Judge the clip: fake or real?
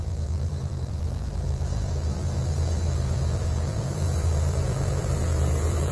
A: fake